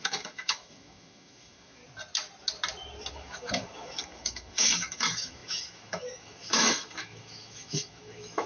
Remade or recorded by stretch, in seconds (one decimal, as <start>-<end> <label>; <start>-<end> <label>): 0.0-1.8 remade; 1.8-3.1 recorded; 3.1-8.5 remade